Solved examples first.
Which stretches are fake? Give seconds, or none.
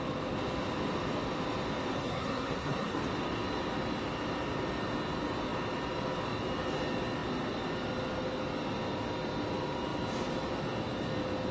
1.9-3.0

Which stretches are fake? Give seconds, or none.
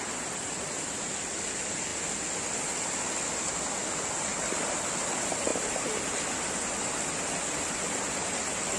none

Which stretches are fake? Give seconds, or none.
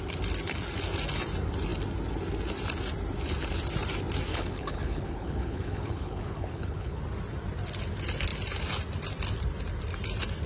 4.3-7.0